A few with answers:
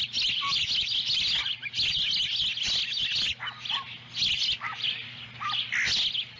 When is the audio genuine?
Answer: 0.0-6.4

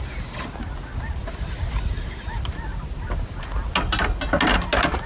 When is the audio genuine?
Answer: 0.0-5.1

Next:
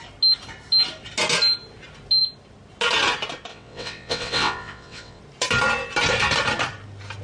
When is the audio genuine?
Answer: 0.0-3.5; 5.2-7.2

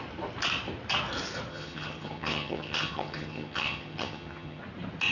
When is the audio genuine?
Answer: 0.0-1.5; 4.6-5.1

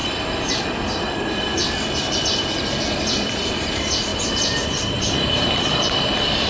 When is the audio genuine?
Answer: none

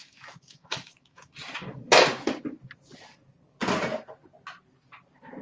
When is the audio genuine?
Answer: 1.3-5.4